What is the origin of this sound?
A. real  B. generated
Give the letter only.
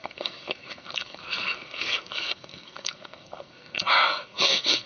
B